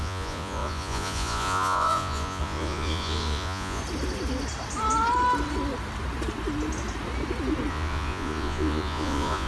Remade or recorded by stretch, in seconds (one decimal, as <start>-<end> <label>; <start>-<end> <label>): 0.0-3.8 remade; 3.8-7.7 recorded; 7.7-9.5 remade